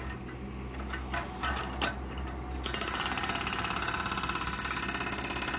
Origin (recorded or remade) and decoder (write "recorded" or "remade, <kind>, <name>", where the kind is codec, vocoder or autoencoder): recorded